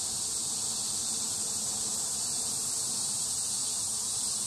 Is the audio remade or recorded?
recorded